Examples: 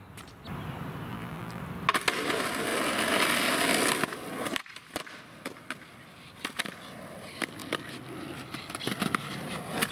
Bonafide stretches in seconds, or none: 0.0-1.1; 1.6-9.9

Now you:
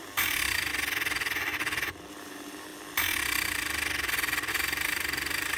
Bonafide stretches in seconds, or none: 0.7-2.2; 2.7-4.5

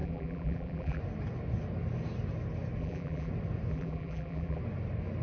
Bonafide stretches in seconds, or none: 1.0-2.8; 3.3-3.7; 4.6-5.2

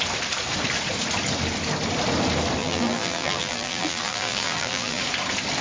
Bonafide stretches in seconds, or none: 0.0-2.6; 5.0-5.6

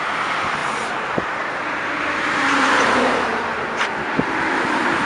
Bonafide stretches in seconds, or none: 3.3-3.8

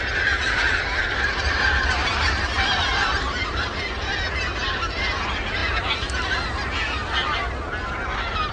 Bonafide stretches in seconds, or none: 0.0-1.0; 3.7-8.5